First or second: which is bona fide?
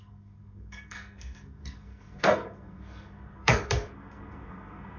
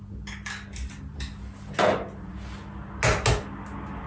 second